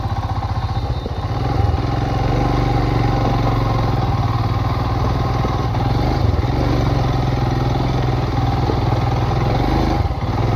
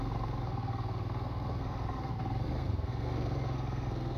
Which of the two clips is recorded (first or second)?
first